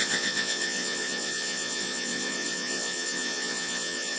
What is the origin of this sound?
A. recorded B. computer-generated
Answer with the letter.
B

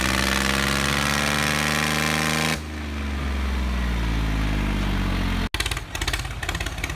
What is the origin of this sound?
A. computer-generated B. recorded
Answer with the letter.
B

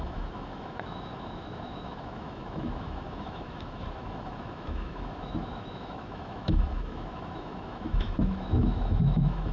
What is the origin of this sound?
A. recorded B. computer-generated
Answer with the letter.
B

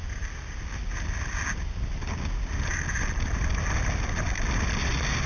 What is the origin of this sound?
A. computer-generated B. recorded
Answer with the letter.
B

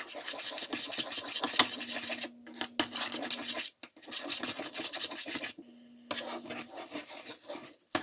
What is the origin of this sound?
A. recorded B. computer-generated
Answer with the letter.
A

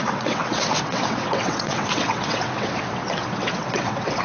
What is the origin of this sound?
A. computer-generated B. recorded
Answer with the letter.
A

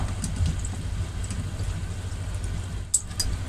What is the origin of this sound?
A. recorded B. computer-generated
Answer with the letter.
A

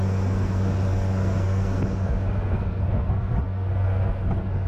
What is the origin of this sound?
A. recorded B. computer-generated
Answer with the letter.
B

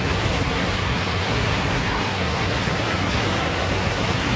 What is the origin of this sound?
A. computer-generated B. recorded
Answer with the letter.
A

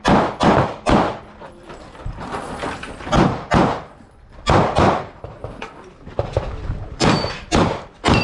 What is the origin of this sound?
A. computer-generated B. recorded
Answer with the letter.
A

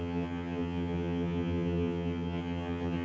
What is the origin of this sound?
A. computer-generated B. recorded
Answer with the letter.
A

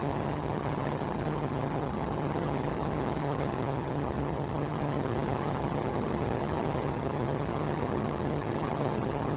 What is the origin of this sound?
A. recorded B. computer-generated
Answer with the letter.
B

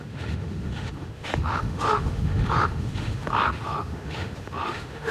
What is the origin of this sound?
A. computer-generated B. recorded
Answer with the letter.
A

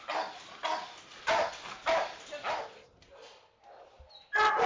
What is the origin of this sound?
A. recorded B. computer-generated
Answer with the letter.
A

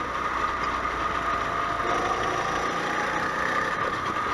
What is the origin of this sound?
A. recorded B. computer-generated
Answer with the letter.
A